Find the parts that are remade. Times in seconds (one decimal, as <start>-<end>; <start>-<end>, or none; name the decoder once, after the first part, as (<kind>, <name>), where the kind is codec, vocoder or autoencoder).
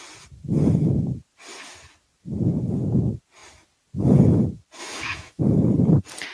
4.8-5.4 (autoencoder, DAC-VAE)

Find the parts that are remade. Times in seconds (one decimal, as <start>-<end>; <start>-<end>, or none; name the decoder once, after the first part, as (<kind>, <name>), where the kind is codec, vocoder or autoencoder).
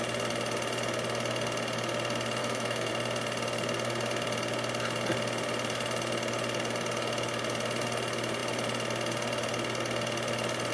2.4-2.9 (autoencoder, DAC-VAE)